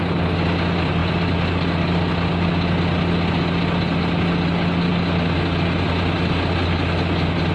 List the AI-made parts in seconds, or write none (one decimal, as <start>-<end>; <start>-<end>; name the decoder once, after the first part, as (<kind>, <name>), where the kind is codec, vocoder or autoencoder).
none